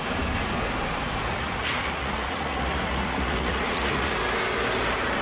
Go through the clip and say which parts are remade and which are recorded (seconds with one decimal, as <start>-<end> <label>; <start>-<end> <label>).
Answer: 0.0-1.3 recorded; 1.3-4.1 remade; 4.1-5.2 recorded